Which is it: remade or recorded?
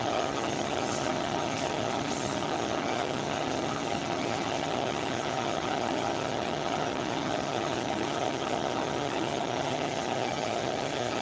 remade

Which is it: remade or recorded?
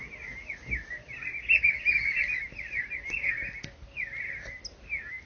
recorded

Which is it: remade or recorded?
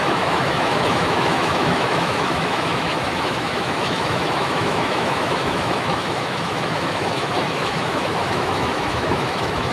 remade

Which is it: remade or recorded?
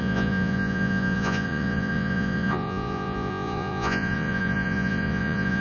remade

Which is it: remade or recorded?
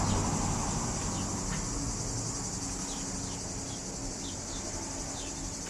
recorded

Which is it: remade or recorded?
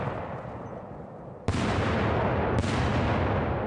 recorded